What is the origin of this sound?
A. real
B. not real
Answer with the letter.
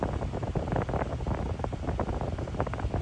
A